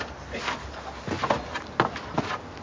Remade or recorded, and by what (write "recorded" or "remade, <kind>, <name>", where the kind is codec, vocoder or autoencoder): recorded